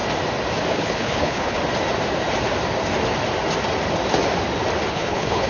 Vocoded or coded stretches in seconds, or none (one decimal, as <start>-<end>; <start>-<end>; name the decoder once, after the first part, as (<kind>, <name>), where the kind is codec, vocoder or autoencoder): 0.7-1.6 (codec, HILCodec); 4.9-5.5